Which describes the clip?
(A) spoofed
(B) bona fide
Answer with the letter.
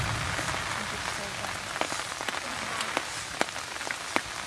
B